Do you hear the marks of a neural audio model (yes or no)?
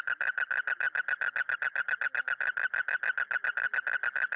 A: no